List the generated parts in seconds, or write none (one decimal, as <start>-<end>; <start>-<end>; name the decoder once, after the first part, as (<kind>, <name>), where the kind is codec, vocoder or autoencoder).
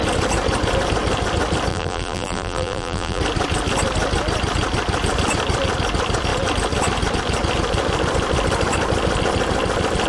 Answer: 1.7-3.2 (vocoder, BigVGAN v2)